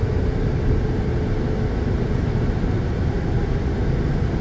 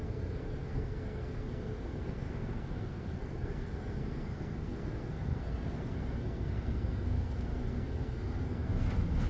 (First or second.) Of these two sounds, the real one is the first